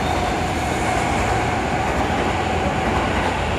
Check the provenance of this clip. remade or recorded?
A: recorded